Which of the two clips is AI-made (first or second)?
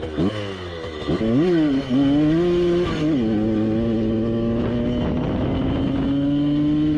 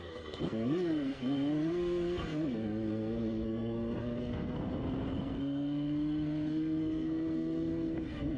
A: second